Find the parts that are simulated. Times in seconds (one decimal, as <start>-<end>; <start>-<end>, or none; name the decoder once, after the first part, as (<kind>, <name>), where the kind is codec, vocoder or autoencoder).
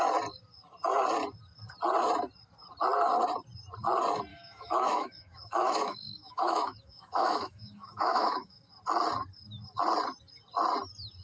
4.3-8.6 (autoencoder, DAC-VAE)